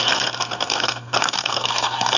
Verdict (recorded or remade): remade